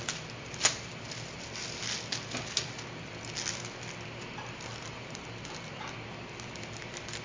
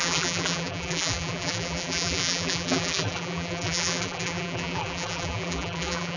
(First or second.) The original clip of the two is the first